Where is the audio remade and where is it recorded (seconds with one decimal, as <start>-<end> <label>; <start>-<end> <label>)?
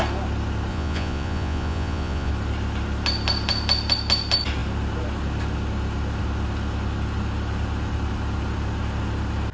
0.0-0.7 recorded; 0.7-2.3 remade; 2.3-9.5 recorded